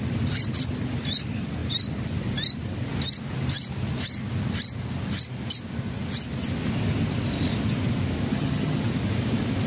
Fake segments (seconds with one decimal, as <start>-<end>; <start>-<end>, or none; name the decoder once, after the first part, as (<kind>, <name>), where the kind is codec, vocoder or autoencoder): 8.3-8.8 (vocoder, HiFi-GAN)